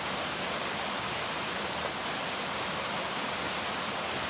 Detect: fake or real real